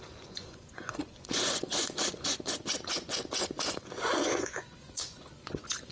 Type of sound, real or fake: fake